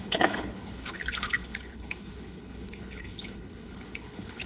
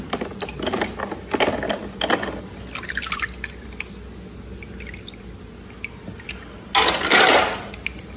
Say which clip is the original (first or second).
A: second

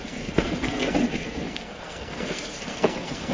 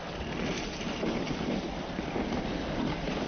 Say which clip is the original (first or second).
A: second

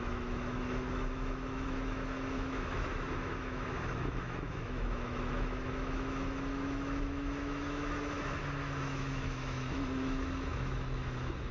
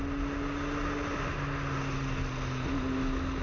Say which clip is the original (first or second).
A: second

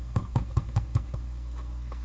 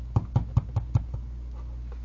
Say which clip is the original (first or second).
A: second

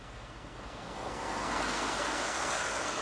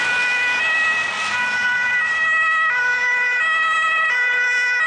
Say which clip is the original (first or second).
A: second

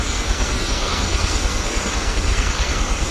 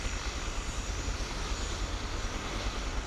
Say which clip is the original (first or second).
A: second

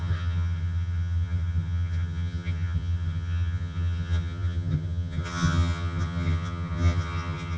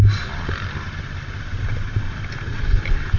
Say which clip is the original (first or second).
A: second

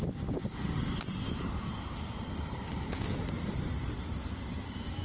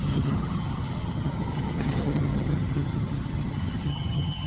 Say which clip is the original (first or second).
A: first